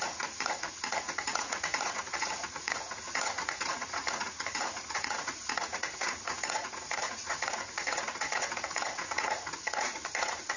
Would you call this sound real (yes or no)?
no